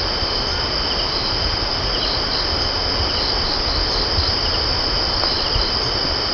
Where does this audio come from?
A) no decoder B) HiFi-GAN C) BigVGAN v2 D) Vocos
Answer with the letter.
A